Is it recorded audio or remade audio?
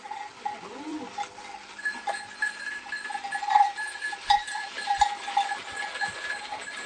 remade